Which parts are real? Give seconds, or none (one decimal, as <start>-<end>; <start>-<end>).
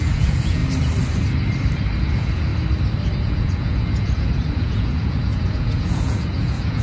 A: 0.6-2.0; 2.5-3.2